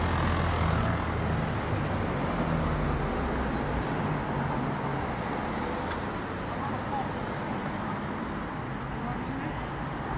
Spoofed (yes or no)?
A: no